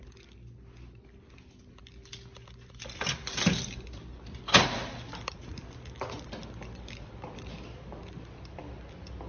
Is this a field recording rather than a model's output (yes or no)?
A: yes